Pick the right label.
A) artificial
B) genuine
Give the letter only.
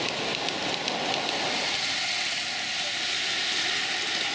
B